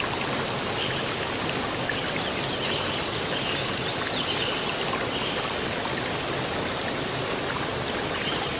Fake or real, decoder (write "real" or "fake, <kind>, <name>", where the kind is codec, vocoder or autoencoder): real